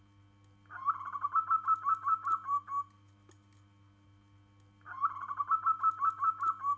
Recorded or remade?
recorded